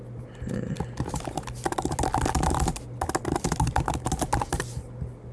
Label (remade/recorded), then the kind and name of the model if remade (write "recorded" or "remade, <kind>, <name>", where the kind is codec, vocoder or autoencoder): recorded